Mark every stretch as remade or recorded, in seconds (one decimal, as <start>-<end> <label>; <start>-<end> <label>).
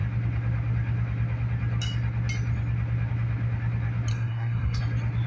0.0-4.1 recorded; 4.1-4.8 remade; 4.8-5.3 recorded